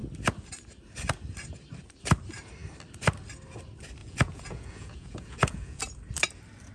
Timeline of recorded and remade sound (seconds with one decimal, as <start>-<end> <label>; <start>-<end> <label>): 0.0-4.0 recorded; 4.0-5.8 remade; 5.8-6.7 recorded